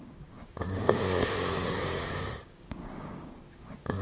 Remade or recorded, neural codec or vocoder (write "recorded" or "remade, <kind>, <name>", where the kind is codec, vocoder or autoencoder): remade, codec, DAC